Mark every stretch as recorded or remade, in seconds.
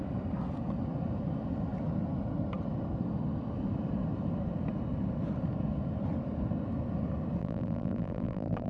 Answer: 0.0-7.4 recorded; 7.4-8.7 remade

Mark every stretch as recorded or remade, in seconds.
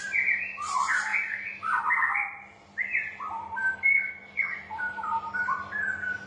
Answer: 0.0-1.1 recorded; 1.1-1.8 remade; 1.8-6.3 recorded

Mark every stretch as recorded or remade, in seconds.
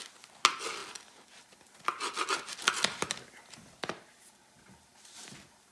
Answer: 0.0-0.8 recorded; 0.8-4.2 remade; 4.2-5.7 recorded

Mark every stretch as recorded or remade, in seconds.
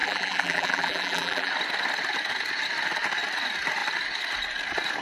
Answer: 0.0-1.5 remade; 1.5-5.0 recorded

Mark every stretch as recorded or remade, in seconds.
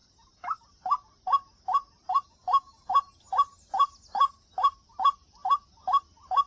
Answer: 0.0-2.2 remade; 2.2-6.5 recorded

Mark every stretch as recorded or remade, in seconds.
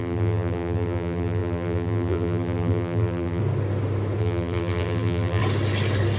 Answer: 0.0-3.4 remade; 3.4-4.2 recorded; 4.2-5.4 remade; 5.4-6.2 recorded